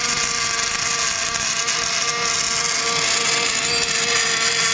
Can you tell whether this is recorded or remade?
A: recorded